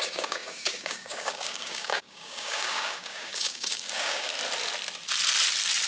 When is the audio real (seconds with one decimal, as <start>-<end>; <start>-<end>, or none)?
4.3-5.9